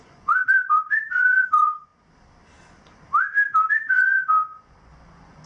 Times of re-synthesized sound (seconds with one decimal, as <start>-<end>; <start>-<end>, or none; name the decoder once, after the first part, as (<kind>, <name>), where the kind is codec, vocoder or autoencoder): 0.0-1.9 (vocoder, Vocos); 3.7-5.5